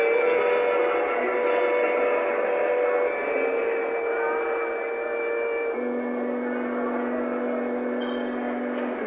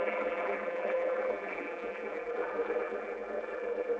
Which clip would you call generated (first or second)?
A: second